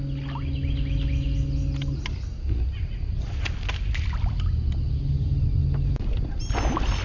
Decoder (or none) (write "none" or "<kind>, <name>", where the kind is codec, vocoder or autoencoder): none